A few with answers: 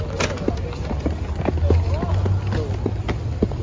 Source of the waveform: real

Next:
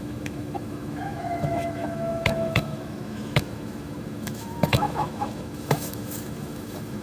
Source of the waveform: fake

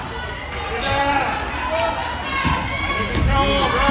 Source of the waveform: real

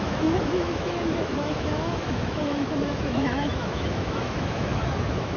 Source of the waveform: fake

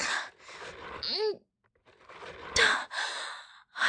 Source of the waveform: real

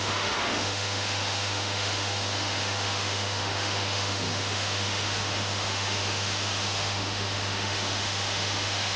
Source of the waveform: fake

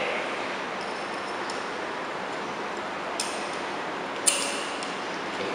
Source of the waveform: real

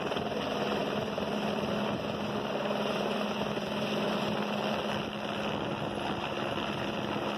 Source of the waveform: real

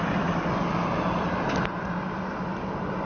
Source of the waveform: real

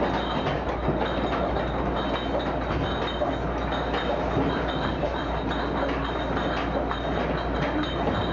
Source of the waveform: real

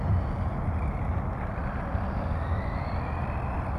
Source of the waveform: real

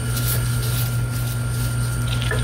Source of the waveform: real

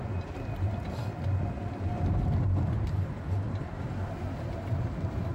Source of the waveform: real